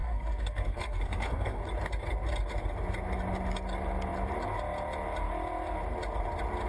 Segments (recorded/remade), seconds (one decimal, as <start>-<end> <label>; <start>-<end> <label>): 0.0-1.6 remade; 1.6-6.7 recorded